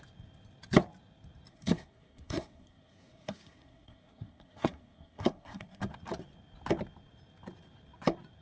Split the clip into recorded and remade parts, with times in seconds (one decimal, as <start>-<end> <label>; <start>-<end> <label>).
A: 0.0-1.5 recorded; 1.5-5.8 remade; 5.8-8.4 recorded